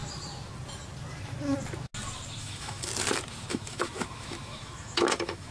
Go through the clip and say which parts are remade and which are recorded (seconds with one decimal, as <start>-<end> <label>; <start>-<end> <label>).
0.0-2.4 recorded; 2.4-2.9 remade; 2.9-3.5 recorded; 3.5-5.5 remade